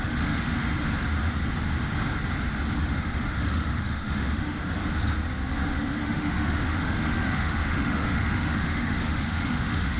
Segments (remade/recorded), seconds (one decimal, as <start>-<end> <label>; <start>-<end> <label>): 0.0-0.6 remade; 0.6-2.8 recorded; 2.8-4.8 remade; 4.8-6.0 recorded; 6.0-10.0 remade